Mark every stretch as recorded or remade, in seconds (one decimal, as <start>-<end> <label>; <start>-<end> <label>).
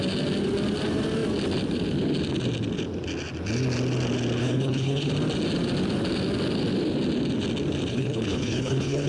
0.0-4.4 recorded; 4.4-5.1 remade; 5.1-7.9 recorded; 7.9-9.1 remade